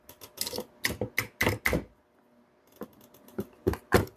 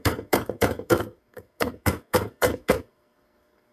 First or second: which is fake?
second